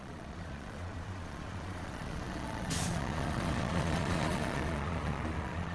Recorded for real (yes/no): no